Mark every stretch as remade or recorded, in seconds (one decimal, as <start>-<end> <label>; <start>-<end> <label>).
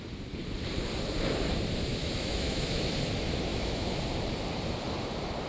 0.0-1.9 recorded; 1.9-2.9 remade; 2.9-3.5 recorded; 3.5-4.0 remade; 4.0-5.5 recorded